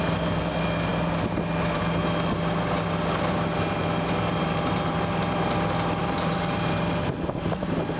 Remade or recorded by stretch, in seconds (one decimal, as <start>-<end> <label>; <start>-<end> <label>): 0.0-4.4 recorded; 4.4-5.1 remade; 5.1-6.0 recorded; 6.0-6.9 remade; 6.9-8.0 recorded